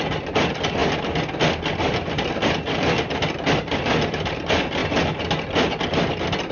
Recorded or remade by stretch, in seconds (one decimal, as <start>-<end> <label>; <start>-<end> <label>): 0.0-0.8 remade; 0.8-1.8 recorded; 1.8-4.8 remade; 4.8-5.9 recorded; 5.9-6.5 remade